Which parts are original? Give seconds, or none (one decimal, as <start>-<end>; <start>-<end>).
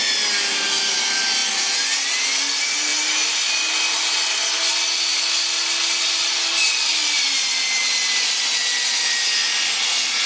0.0-10.3